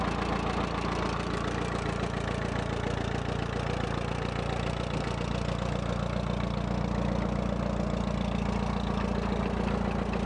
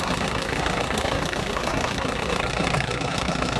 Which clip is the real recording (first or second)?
first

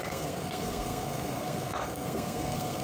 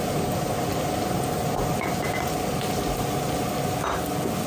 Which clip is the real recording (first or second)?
second